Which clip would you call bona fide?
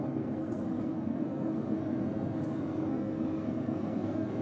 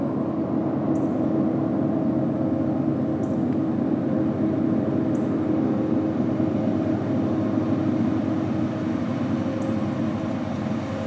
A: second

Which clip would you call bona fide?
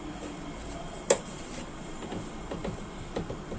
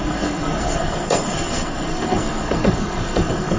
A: first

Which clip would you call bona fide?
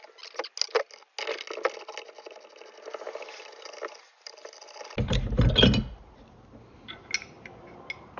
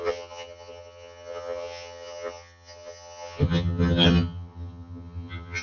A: first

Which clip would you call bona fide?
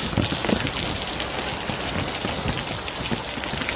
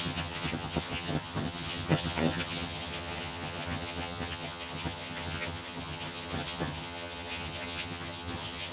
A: first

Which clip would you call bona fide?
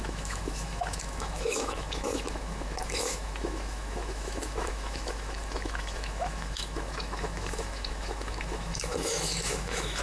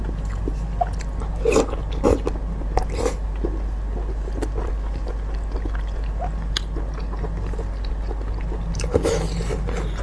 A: second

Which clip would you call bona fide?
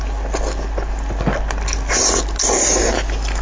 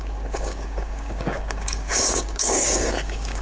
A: first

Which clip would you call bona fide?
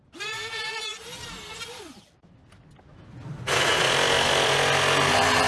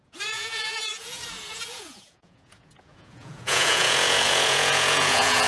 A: first